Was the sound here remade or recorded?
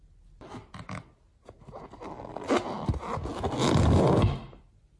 recorded